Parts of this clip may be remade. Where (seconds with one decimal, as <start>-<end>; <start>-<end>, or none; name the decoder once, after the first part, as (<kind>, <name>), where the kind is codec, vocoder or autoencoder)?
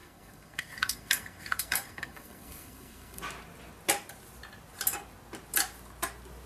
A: 0.0-3.2 (codec, SNAC)